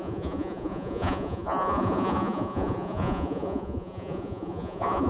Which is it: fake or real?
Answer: fake